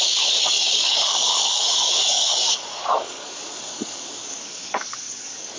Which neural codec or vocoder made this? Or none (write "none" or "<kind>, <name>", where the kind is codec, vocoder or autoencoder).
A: codec, DAC